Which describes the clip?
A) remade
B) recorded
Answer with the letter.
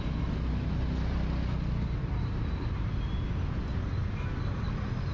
B